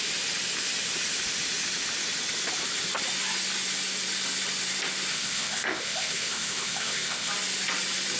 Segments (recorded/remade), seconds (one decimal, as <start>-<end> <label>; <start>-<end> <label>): 0.0-5.1 recorded; 5.1-7.3 remade; 7.3-8.2 recorded